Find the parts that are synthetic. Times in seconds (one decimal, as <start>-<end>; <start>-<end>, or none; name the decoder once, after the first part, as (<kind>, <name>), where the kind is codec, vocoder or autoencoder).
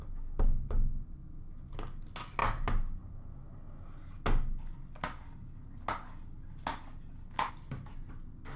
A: none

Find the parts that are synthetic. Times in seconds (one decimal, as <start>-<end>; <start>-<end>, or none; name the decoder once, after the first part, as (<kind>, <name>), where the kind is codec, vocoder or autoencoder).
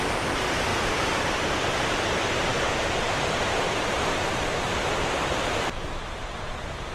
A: 0.0-0.7 (vocoder, BigVGAN v2); 1.3-6.9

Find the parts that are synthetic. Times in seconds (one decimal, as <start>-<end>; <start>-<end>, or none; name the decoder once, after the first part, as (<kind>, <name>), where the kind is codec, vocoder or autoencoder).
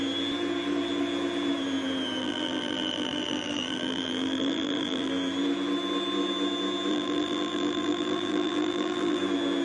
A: 2.2-5.1 (vocoder, BigVGAN v2); 6.9-9.2